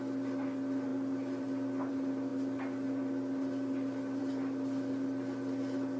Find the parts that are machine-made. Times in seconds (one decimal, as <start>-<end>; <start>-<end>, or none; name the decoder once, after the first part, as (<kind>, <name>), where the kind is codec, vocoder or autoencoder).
none